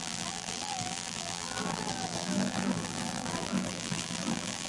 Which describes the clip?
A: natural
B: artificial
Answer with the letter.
B